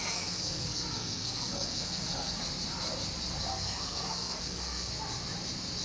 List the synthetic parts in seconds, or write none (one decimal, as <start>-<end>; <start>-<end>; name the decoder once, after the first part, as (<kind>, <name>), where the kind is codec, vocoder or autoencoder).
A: 0.0-2.4 (codec, SNAC); 3.5-4.9